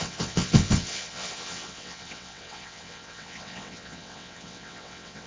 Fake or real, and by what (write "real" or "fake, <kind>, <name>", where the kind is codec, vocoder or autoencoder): fake, vocoder, WaveNeXt